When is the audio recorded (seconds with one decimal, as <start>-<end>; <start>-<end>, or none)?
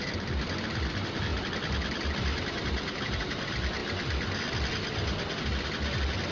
0.0-6.3